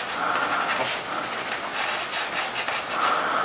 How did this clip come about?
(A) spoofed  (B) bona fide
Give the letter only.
B